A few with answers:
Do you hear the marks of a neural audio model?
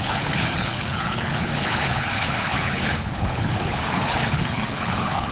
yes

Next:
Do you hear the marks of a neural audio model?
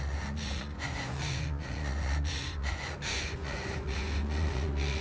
yes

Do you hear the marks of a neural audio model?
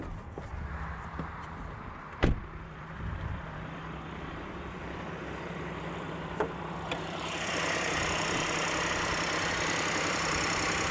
yes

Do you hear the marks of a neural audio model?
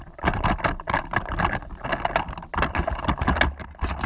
no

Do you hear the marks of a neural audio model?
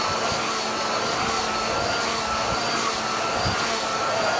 no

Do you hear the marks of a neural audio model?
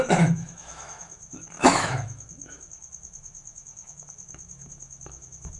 yes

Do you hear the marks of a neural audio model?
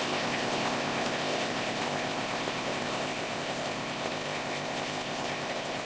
yes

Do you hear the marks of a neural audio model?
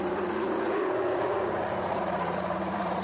yes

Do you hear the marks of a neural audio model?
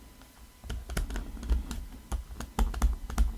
no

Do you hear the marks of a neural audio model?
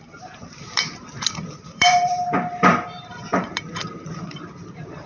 yes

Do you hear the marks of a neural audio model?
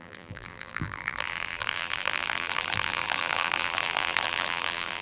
yes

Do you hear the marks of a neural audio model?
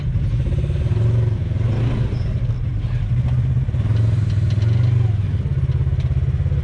no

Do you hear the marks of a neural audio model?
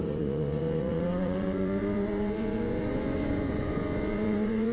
yes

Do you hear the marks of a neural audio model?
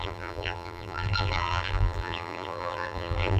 yes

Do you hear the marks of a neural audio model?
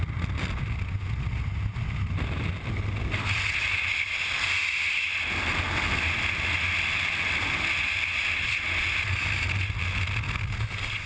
no